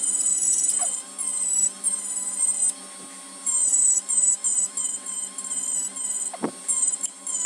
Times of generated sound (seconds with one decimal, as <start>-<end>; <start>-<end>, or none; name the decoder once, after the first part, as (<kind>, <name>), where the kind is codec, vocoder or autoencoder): none